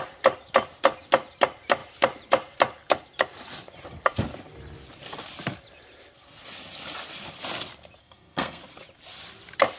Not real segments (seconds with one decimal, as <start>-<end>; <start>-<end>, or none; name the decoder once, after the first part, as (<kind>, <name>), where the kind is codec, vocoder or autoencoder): 8.0-8.6 (codec, SNAC)